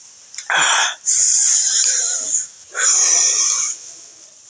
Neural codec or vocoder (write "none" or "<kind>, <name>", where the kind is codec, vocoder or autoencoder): none